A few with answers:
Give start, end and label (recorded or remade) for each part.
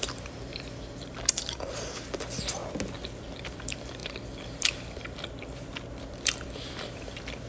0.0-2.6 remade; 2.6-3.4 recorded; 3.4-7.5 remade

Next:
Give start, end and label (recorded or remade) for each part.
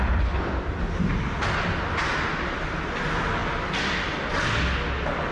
0.0-5.3 recorded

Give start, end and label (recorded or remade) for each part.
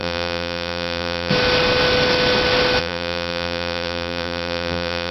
0.0-1.3 remade; 1.3-2.8 recorded; 2.8-5.1 remade